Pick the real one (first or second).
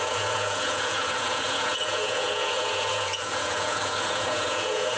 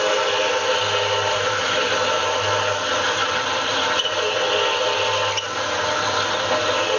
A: second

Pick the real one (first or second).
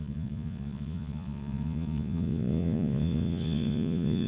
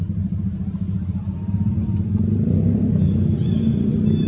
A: second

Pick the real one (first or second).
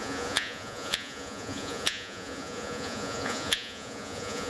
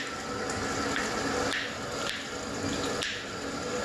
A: second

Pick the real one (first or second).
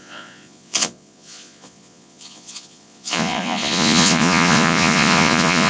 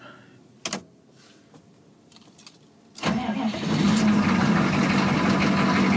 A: second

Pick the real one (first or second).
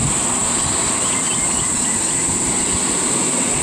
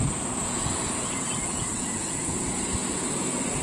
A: first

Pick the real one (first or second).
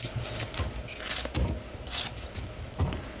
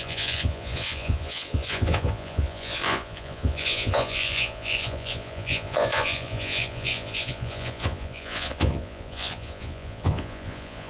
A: first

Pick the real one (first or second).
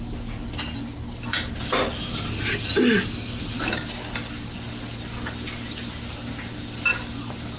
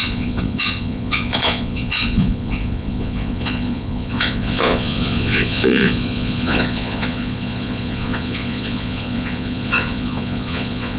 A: first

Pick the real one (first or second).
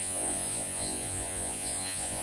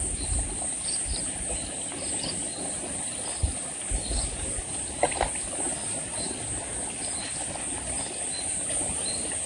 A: second